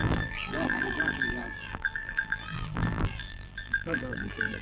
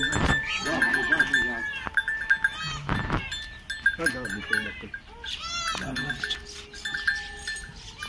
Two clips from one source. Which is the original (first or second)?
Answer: second